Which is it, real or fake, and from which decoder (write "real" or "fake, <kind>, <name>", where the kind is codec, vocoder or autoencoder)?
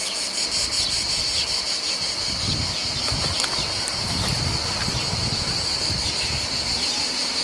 real